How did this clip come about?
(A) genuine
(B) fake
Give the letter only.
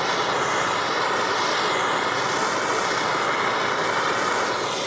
A